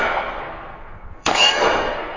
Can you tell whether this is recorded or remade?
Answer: remade